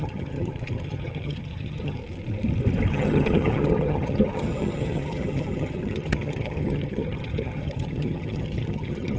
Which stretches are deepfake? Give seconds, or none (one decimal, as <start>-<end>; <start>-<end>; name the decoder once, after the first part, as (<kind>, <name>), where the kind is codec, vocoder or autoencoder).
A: 0.0-2.0 (vocoder, HiFi-GAN); 2.9-9.2